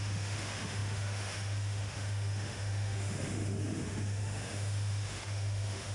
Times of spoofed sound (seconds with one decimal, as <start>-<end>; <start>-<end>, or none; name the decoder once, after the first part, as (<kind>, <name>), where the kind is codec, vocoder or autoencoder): 0.0-5.9 (autoencoder, DAC-VAE)